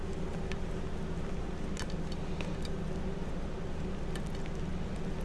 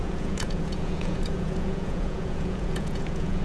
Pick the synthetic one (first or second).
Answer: second